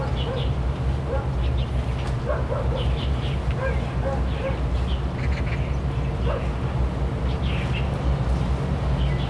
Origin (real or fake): real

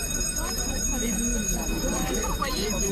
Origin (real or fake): fake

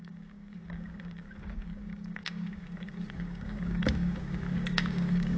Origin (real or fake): fake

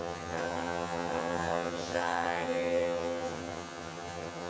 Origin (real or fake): fake